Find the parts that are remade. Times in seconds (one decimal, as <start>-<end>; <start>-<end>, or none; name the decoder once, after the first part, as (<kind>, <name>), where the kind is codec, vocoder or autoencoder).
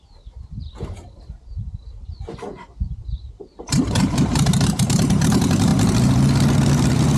0.0-2.5 (vocoder, BigVGAN v2); 3.1-5.7; 6.7-7.2